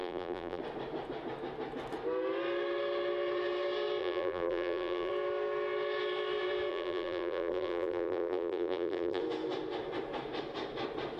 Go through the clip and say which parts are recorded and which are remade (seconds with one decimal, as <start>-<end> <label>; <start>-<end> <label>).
0.0-0.6 remade; 0.6-4.0 recorded; 4.0-5.1 remade; 5.1-6.7 recorded; 6.7-9.2 remade; 9.2-11.2 recorded